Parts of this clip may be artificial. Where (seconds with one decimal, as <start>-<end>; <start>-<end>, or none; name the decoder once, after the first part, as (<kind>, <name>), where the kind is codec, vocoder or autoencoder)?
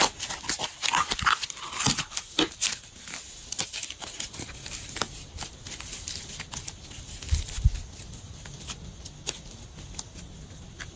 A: none